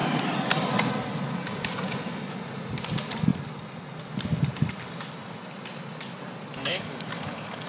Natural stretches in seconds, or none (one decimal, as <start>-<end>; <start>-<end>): 0.0-6.6